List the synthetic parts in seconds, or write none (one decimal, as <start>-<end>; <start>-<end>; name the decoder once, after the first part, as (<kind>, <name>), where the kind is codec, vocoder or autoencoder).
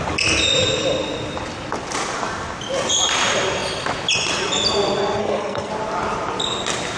5.2-5.7 (codec, SNAC)